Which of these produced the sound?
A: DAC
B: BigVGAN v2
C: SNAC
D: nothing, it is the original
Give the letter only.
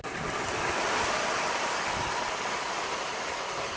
D